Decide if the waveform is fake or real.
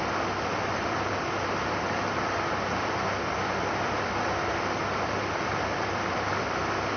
real